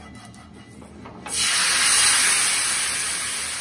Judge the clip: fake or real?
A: real